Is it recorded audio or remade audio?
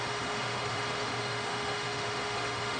remade